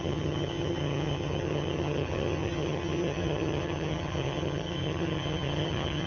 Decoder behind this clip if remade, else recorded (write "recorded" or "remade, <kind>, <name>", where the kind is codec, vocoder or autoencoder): remade, vocoder, HiFi-GAN